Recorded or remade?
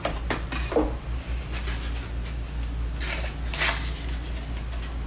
recorded